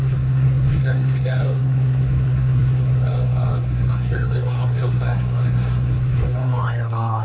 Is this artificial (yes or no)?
yes